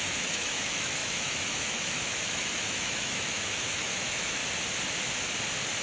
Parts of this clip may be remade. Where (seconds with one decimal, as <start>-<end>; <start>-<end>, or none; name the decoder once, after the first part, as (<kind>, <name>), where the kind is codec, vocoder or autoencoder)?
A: 0.0-4.4 (autoencoder, DAC-VAE)